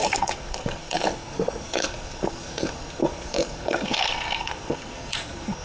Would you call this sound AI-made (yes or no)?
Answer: yes